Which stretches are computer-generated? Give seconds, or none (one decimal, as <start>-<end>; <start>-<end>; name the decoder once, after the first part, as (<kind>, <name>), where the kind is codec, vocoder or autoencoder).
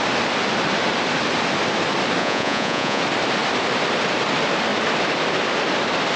2.2-3.0 (vocoder, Vocos)